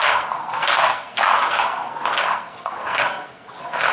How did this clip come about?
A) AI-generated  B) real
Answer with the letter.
A